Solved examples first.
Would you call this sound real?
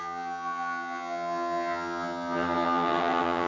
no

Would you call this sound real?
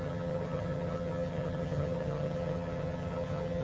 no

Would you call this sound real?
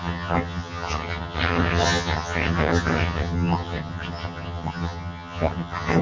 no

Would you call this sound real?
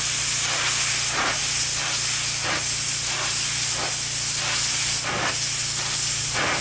yes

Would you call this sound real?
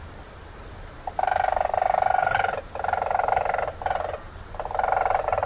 yes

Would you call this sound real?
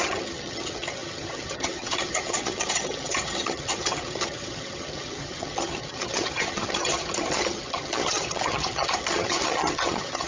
no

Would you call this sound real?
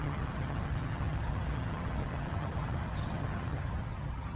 no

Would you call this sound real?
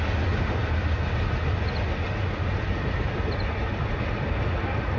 yes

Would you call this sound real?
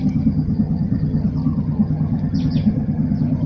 no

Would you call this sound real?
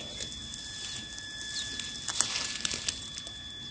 yes